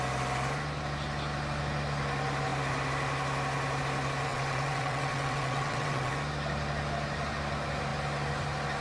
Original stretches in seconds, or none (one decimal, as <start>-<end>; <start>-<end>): 0.0-4.3; 6.1-8.8